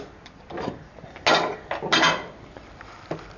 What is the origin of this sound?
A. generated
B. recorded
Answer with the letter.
B